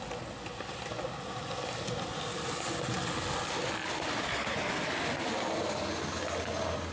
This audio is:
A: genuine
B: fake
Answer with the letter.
A